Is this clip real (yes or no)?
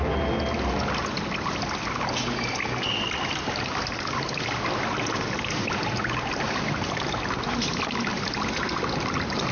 yes